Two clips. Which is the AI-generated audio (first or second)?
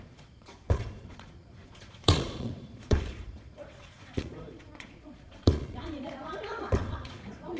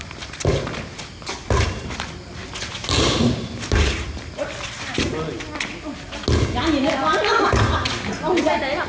first